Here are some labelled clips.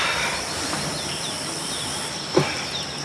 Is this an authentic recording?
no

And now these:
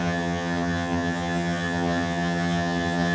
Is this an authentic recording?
no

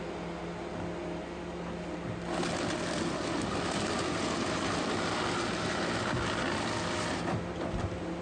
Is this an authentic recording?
yes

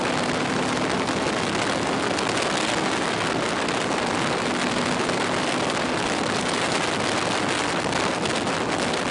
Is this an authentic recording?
yes